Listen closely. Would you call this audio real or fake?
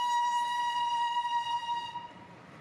fake